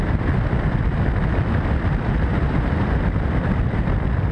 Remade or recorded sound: remade